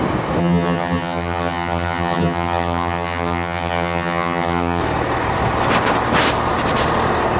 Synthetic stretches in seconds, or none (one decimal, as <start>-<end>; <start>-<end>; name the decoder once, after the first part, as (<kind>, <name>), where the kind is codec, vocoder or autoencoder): 0.4-4.8 (vocoder, HiFi-GAN)